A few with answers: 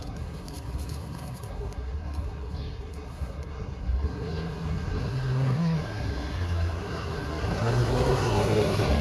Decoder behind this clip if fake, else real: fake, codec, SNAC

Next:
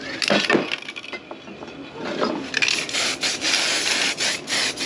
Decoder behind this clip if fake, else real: real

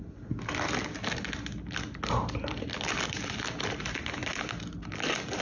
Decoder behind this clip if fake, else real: real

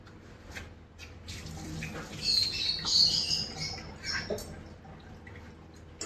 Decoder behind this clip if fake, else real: real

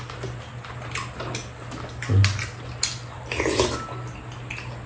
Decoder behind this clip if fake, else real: real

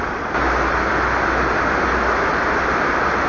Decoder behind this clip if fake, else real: real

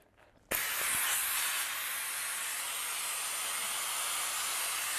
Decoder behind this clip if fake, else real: real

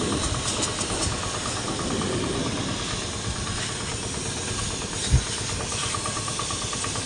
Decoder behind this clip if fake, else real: real